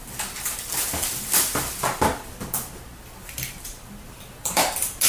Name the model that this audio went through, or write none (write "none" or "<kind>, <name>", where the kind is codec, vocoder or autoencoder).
none